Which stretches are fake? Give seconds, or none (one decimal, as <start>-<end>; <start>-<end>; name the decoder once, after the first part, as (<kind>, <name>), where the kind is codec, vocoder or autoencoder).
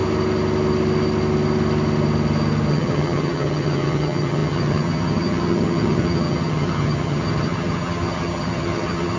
2.7-9.2 (vocoder, HiFi-GAN)